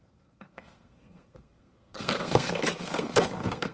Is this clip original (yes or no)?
no